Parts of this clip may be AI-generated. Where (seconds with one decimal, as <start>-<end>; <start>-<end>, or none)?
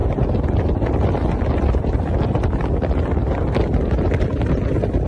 none